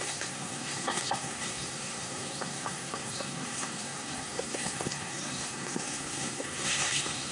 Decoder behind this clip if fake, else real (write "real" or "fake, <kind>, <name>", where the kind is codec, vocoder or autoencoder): fake, codec, SNAC